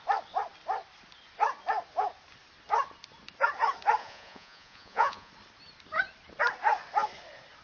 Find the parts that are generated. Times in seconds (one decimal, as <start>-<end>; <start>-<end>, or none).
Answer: 4.0-5.3